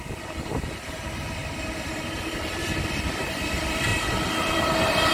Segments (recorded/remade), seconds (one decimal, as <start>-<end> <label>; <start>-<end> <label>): 0.0-3.9 remade; 3.9-4.5 recorded; 4.5-5.1 remade